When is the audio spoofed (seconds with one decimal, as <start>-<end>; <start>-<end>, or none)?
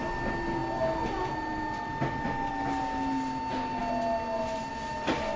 none